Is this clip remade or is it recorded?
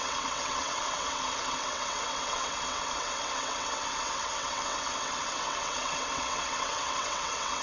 remade